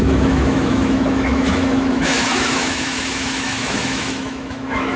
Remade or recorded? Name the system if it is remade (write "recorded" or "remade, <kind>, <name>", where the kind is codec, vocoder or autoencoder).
remade, autoencoder, DAC-VAE